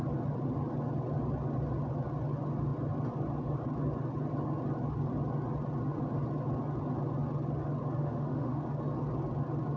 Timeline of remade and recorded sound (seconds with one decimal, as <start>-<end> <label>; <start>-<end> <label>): 0.0-8.0 recorded; 8.0-8.6 remade; 8.6-9.8 recorded

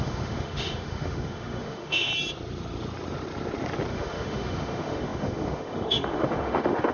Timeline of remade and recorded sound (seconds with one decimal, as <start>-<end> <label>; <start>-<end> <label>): 0.0-2.1 remade; 2.1-3.9 recorded; 3.9-6.9 remade